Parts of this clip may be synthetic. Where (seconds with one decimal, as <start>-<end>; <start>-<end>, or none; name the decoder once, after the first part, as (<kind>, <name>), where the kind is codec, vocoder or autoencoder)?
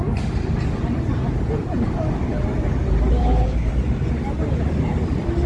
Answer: 3.2-3.7 (codec, HILCodec)